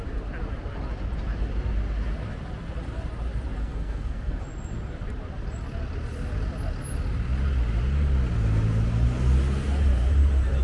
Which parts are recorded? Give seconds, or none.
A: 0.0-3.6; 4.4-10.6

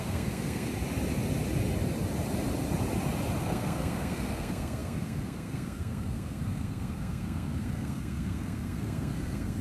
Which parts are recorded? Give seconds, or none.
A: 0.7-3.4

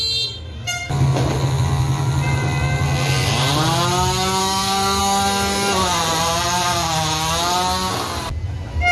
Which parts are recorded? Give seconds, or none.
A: 0.0-4.4; 5.0-8.9

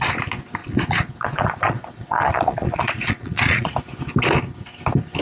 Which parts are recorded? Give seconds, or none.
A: 0.0-0.6; 3.7-5.2